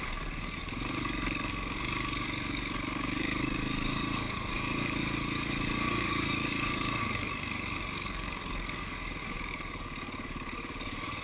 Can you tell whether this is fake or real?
fake